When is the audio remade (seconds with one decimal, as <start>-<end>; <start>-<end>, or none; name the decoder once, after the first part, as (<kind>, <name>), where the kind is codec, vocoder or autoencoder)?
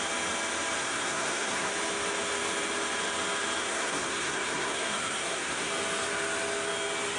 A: 0.8-1.7 (codec, SNAC); 3.6-5.7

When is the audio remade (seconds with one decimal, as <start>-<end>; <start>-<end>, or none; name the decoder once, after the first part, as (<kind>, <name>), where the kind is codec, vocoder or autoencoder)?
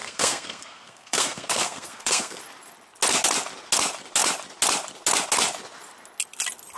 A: 0.0-2.4 (codec, SNAC)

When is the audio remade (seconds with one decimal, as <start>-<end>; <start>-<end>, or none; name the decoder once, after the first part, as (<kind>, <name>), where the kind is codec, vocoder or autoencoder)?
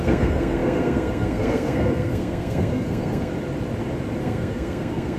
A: 0.0-3.3 (codec, SNAC); 4.2-5.2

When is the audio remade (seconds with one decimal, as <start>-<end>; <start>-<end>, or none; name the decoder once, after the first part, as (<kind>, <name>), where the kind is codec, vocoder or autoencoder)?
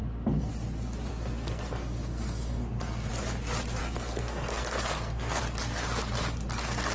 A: 0.0-0.5 (codec, SNAC); 1.1-3.1; 3.8-5.4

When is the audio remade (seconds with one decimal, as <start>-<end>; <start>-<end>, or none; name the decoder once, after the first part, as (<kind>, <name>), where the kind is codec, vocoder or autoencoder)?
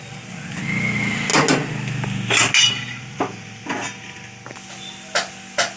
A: none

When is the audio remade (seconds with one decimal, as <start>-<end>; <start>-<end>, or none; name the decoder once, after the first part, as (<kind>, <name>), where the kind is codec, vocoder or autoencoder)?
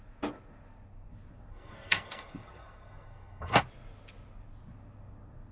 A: 1.5-3.6 (codec, SNAC)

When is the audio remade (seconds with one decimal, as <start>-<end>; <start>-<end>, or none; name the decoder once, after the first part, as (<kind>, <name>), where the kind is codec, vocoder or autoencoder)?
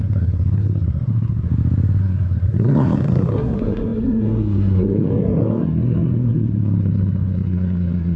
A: 0.0-1.5 (codec, SNAC); 2.0-8.2